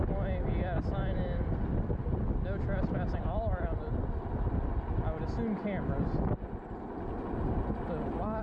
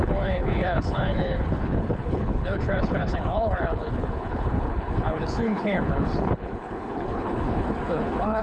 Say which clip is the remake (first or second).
second